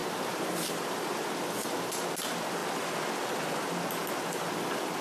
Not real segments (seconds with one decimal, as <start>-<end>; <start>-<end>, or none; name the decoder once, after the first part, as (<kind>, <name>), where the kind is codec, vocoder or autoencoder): 0.0-1.1 (vocoder, BigVGAN v2)